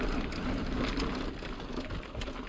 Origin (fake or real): real